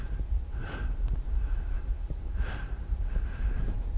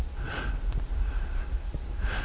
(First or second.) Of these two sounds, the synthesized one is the first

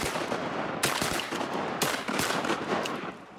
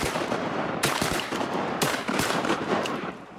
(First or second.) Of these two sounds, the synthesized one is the second